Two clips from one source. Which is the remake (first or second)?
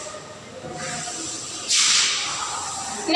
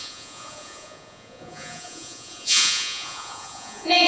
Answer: second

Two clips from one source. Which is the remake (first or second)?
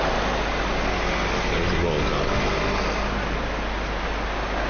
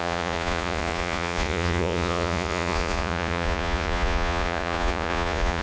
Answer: second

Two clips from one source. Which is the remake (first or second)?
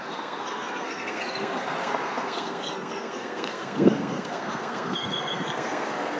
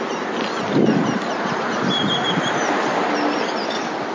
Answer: first